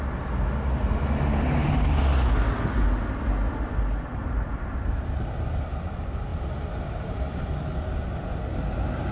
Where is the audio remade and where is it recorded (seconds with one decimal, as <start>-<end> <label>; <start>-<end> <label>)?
0.0-4.1 recorded; 4.1-5.0 remade; 5.0-6.3 recorded; 6.3-7.4 remade; 7.4-8.3 recorded; 8.3-9.1 remade